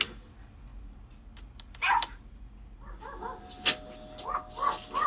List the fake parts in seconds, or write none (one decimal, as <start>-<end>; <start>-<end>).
none